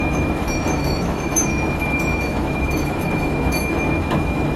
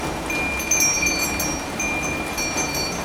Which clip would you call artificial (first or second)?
first